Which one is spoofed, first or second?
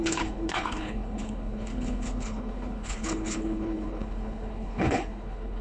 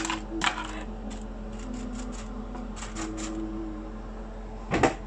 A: first